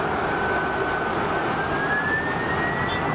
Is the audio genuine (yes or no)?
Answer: yes